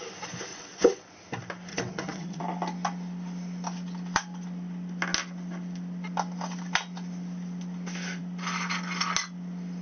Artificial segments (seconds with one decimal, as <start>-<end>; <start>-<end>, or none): 0.5-1.0; 1.7-2.4